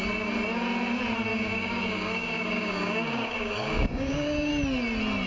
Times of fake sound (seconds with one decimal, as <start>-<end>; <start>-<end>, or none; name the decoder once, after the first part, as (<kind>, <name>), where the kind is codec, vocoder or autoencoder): 1.3-4.5 (codec, DAC)